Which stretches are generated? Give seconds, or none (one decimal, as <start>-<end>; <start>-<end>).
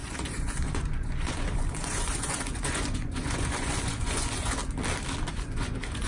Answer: 0.0-4.6; 5.3-6.1